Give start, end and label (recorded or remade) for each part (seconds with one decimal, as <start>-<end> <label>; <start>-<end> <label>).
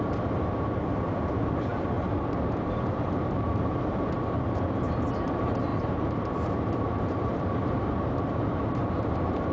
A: 0.0-9.5 remade